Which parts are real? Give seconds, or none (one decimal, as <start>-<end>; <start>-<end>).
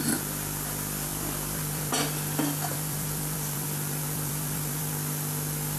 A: 0.0-1.1; 1.9-2.7; 4.9-5.8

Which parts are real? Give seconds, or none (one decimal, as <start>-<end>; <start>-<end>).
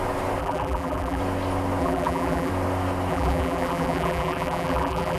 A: 0.0-0.4; 1.2-1.8; 2.5-3.1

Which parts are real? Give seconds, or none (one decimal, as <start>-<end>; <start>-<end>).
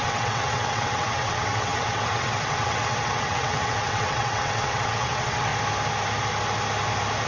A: 5.5-7.3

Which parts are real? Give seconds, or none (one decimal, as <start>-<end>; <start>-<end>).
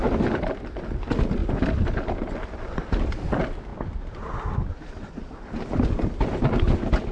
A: 0.0-3.7; 4.2-7.1